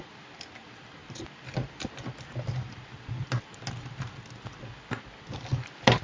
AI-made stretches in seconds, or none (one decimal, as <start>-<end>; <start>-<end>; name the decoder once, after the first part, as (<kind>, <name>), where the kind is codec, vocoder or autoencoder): none